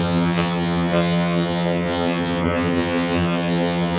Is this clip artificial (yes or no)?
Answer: yes